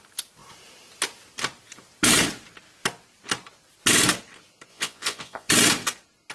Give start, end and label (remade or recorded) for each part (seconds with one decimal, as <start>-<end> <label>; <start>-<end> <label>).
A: 0.0-4.7 recorded; 4.7-5.5 remade; 5.5-6.3 recorded